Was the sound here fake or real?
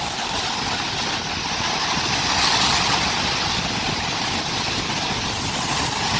real